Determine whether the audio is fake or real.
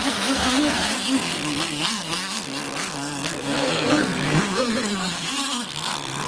fake